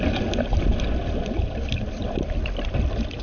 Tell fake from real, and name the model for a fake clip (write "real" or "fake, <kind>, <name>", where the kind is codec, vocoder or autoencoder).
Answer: real